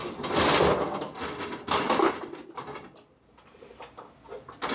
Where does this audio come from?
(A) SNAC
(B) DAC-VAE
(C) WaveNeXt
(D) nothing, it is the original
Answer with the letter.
D